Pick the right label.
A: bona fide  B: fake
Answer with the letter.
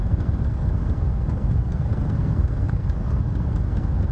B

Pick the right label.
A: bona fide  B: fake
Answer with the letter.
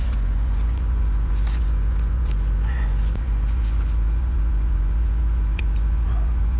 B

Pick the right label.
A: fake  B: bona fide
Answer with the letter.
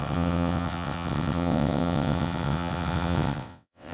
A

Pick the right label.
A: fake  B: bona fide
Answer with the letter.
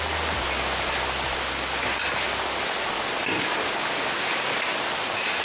B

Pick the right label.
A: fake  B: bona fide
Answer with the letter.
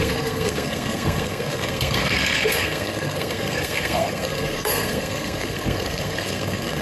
A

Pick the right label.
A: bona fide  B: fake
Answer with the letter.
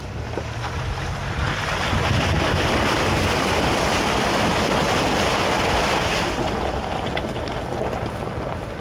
A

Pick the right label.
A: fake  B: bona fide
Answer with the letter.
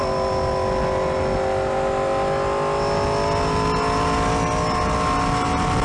B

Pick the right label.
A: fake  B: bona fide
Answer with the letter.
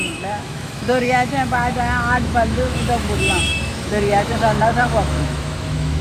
A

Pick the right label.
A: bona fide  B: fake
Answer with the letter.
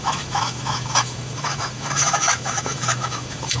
B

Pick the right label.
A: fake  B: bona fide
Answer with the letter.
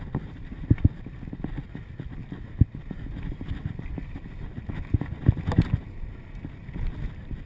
B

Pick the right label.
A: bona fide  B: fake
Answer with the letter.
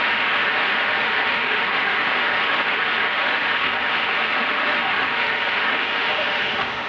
B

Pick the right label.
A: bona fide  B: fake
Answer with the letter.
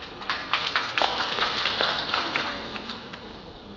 B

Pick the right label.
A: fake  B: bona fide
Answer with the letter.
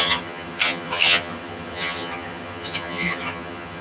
A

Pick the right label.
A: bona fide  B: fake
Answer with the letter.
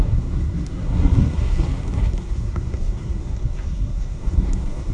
B